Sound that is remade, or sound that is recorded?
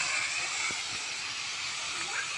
recorded